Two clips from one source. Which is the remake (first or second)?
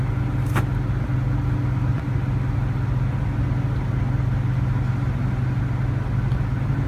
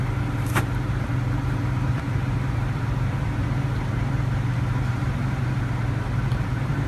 second